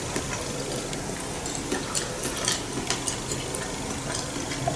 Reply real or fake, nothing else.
real